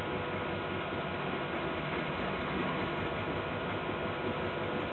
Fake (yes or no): no